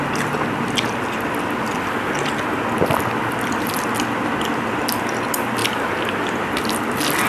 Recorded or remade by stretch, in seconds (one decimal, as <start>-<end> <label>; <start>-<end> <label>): 0.0-7.3 recorded